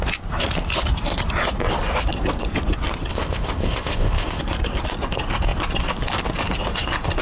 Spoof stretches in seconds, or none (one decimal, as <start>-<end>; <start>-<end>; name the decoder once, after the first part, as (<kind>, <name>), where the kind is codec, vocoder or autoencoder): 3.1-4.4 (codec, ZipCodec)